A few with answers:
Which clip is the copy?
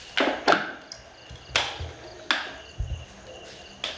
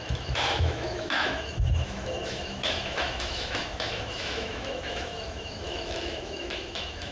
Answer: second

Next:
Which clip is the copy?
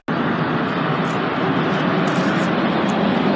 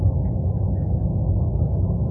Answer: second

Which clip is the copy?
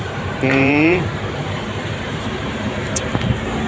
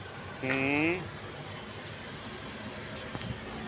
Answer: first